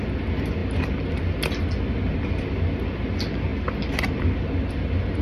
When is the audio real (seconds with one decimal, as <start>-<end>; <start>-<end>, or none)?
0.0-5.2